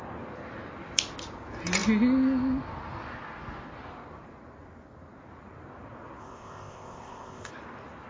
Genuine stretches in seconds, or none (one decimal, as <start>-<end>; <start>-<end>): 0.0-6.2; 7.5-8.1